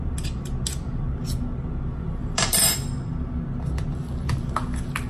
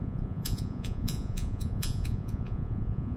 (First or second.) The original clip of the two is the first